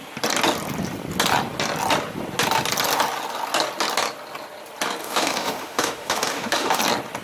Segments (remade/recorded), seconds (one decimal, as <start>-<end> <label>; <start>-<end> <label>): 0.0-5.0 recorded; 5.0-6.8 remade; 6.8-7.2 recorded